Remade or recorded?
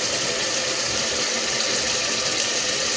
recorded